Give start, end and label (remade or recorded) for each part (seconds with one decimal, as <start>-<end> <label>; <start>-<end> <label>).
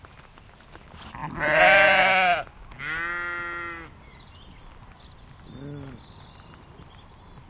0.0-7.5 recorded